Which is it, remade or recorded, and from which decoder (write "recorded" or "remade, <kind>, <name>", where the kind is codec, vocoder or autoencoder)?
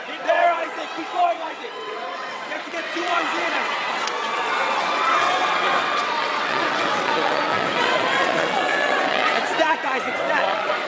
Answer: remade, vocoder, WaveNeXt